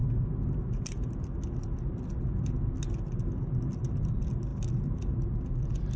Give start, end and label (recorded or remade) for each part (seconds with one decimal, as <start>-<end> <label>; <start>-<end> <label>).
0.0-6.0 recorded